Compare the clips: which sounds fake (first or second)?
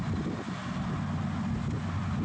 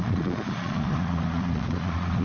second